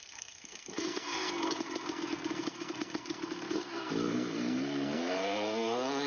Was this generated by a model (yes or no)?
yes